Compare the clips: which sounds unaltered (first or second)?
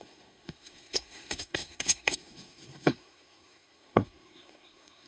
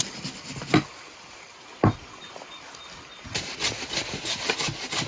second